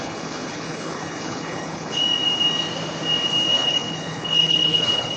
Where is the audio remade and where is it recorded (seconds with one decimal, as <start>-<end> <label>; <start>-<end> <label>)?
0.0-2.0 remade; 2.0-3.5 recorded; 3.5-5.2 remade